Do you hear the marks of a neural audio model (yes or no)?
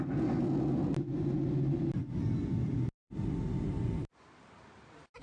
no